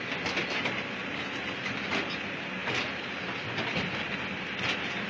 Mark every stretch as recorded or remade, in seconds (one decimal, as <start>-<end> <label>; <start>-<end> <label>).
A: 0.0-5.1 recorded